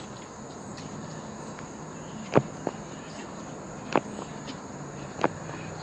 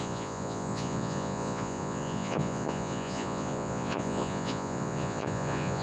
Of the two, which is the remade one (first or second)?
second